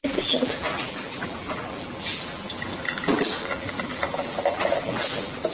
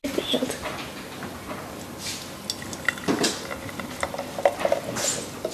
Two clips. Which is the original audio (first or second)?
second